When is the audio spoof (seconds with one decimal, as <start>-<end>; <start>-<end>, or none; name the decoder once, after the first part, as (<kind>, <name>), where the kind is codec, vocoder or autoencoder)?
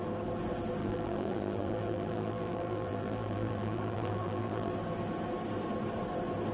0.8-4.7 (vocoder, BigVGAN v2)